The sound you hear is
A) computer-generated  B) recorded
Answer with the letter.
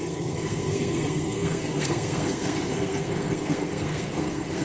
A